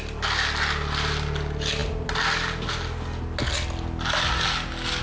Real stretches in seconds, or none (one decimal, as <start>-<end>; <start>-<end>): 0.0-5.0